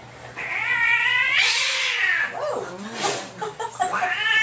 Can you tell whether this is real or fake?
real